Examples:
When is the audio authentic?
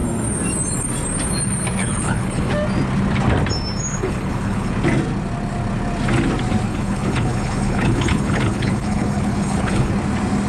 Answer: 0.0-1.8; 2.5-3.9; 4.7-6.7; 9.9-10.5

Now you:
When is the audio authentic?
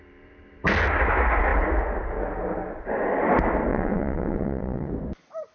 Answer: 0.0-3.7; 4.9-5.5